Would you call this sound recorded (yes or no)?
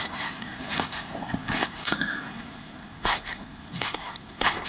no